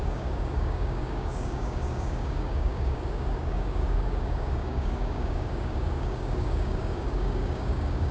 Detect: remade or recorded remade